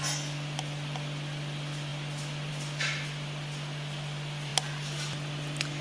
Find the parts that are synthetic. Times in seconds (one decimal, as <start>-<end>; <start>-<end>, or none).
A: none